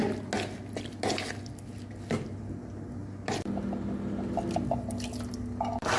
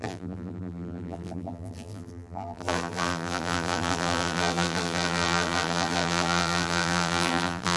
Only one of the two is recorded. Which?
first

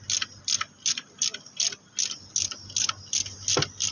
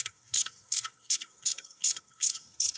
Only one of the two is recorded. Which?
first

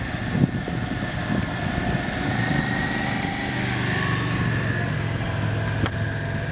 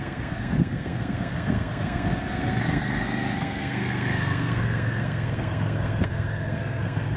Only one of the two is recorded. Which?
first